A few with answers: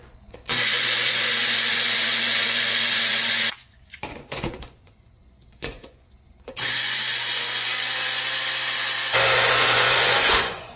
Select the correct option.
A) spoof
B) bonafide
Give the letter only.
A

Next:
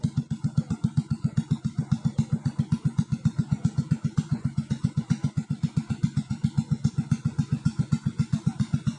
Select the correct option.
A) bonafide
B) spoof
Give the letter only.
B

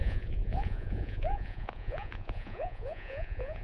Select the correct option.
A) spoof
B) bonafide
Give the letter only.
A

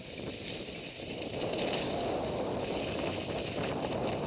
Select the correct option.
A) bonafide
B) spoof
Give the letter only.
A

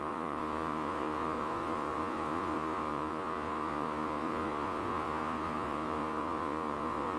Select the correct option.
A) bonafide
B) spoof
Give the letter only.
B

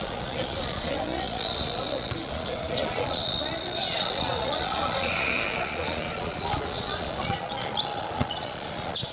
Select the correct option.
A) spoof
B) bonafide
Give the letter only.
A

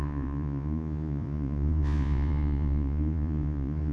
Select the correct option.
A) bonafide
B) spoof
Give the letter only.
B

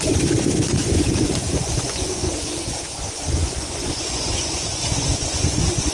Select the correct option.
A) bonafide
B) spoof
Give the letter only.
B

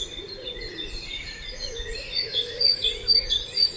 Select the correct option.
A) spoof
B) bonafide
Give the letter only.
A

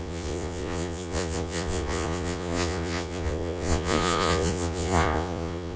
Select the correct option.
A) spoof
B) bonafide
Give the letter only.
A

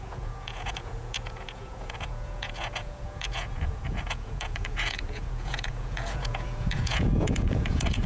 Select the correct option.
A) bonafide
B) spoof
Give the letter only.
B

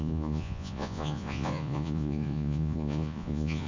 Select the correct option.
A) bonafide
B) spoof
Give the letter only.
B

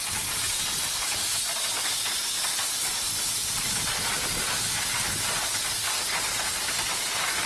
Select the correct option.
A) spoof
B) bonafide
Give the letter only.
B